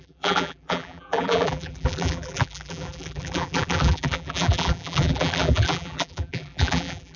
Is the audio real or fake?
fake